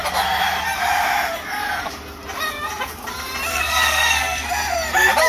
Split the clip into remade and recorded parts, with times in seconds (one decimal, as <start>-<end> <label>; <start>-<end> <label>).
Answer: 0.0-3.5 recorded; 3.5-4.5 remade; 4.5-5.3 recorded